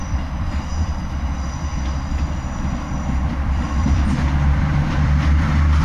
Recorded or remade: remade